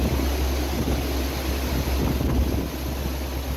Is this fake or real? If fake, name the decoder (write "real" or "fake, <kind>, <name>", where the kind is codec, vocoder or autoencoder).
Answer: real